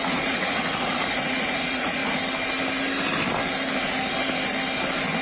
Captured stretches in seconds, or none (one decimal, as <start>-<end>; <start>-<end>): 2.0-5.2